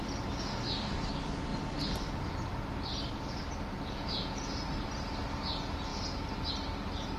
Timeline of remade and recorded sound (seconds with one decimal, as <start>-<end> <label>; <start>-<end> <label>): 0.0-3.7 recorded; 3.7-4.5 remade; 4.5-7.2 recorded